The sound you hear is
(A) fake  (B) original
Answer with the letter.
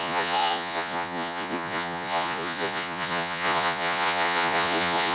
A